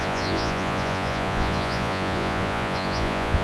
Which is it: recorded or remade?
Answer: remade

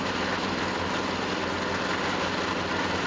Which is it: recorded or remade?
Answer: recorded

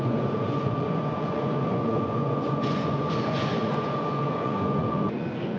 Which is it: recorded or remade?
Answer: remade